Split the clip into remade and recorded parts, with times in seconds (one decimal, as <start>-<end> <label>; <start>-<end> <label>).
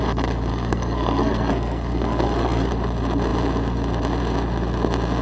0.0-0.5 recorded; 0.5-2.7 remade; 2.7-5.2 recorded